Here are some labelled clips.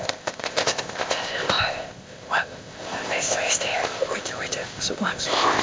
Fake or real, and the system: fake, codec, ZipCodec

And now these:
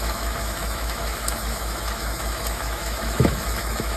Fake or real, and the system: fake, autoencoder, DAC-VAE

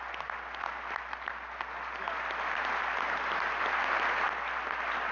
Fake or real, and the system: real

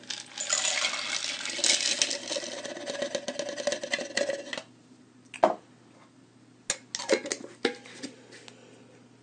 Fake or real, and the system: real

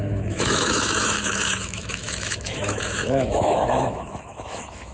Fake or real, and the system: fake, autoencoder, DAC-VAE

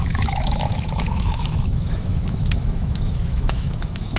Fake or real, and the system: fake, autoencoder, DAC-VAE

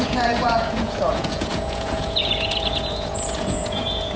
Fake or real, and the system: fake, vocoder, Vocos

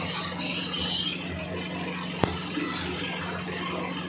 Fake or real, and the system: real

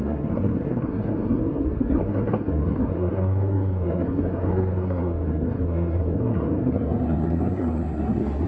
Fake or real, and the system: fake, codec, SNAC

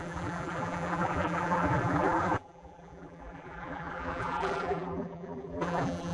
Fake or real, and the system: fake, vocoder, BigVGAN v2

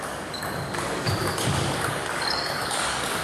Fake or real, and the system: fake, codec, DAC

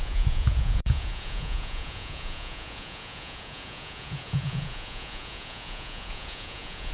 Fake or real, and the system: fake, vocoder, Vocos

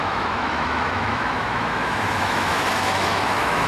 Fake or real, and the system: fake, autoencoder, DAC-VAE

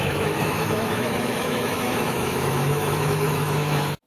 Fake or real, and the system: fake, autoencoder, DAC-VAE